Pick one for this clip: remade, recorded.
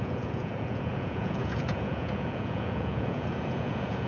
remade